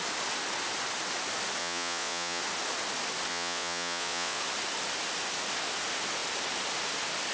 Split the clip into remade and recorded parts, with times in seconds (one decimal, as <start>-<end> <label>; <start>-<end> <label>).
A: 0.0-1.6 recorded; 1.6-2.4 remade; 2.4-3.3 recorded; 3.3-4.4 remade; 4.4-7.3 recorded